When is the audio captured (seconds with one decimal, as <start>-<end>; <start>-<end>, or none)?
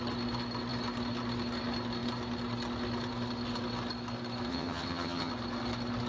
0.0-4.5; 5.3-6.1